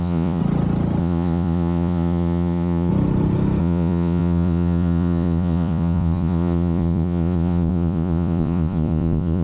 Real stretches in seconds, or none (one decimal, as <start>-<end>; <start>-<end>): 0.4-1.0; 2.9-3.6